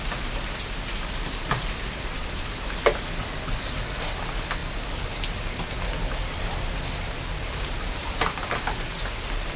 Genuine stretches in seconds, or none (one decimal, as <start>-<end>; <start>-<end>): 0.0-9.6